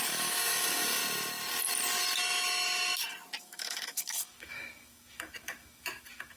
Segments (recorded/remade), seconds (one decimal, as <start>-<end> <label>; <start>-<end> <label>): 0.0-1.0 remade; 1.0-3.4 recorded; 3.4-6.4 remade